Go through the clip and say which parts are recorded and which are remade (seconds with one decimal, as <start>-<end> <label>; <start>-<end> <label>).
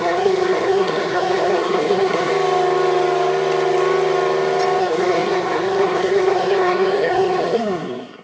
0.0-2.3 remade; 2.3-4.8 recorded; 4.8-8.2 remade